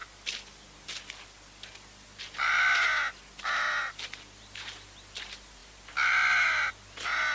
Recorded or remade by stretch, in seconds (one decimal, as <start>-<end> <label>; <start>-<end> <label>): 0.0-7.3 recorded